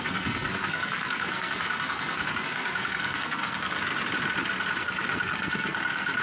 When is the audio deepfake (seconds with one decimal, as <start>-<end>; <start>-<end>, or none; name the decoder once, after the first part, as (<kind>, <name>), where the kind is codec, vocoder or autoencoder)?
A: 0.0-3.9 (codec, SNAC); 4.8-6.2